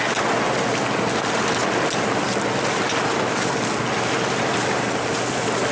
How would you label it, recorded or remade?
recorded